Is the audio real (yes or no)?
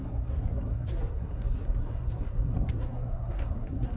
no